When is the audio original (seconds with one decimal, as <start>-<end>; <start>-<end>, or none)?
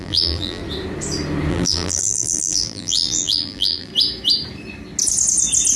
0.6-1.5; 3.9-5.8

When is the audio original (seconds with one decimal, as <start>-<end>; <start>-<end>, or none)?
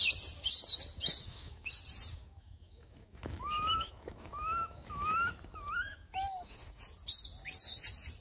0.0-1.2; 1.7-2.1; 5.3-5.9; 6.8-8.2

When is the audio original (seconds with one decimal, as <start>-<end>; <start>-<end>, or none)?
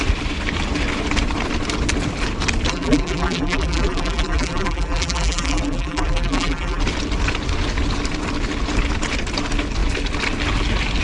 0.0-2.7; 6.8-11.0